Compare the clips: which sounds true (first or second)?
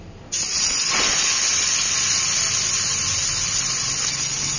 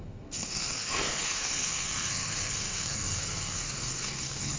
first